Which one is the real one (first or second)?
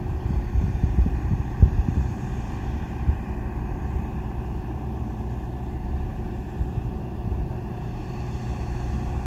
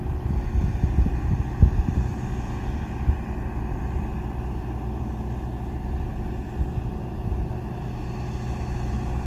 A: second